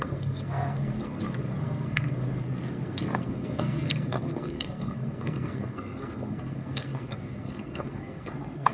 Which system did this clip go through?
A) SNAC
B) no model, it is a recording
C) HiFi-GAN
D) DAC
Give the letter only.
A